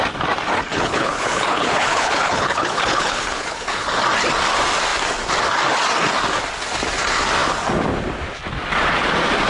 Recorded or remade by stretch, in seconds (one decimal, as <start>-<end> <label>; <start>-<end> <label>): 0.0-0.7 recorded; 0.7-4.0 remade; 4.0-9.5 recorded